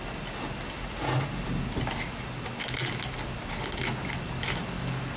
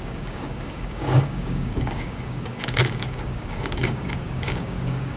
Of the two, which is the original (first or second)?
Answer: first